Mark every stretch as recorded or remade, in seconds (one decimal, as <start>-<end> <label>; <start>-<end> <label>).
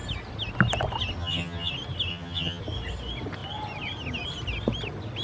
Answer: 0.0-1.2 recorded; 1.2-1.7 remade; 1.7-2.1 recorded; 2.1-2.6 remade; 2.6-5.2 recorded